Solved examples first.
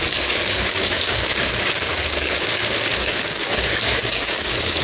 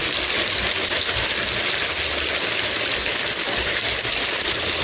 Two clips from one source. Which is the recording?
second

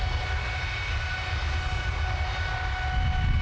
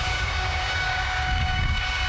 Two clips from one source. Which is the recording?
first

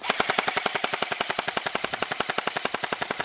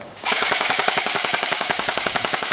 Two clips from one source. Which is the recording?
first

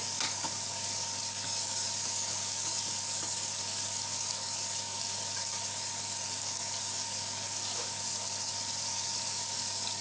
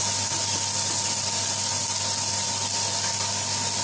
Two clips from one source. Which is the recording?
second